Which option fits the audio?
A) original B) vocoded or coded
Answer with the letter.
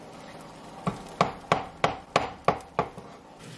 A